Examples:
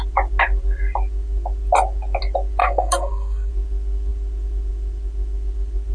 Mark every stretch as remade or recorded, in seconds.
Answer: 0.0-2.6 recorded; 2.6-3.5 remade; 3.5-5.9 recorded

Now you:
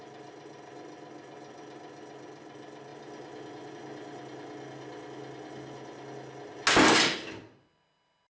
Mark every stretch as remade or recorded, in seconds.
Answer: 0.0-8.3 recorded

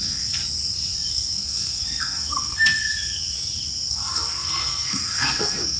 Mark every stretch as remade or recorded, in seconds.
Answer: 0.0-0.4 remade; 0.4-1.1 recorded; 1.1-2.8 remade; 2.8-3.9 recorded; 3.9-5.8 remade

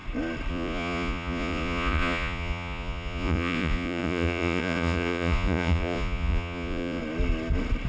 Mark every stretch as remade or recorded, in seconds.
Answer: 0.0-0.5 recorded; 0.5-7.0 remade; 7.0-7.9 recorded

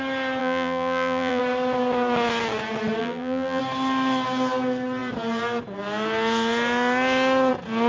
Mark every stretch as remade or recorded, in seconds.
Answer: 0.0-0.4 recorded; 0.4-1.4 remade; 1.4-3.0 recorded; 3.0-3.6 remade; 3.6-7.9 recorded

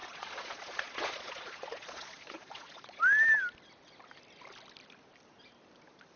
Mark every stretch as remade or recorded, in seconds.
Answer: 0.0-3.0 remade; 3.0-6.2 recorded